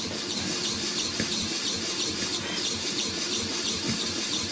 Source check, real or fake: real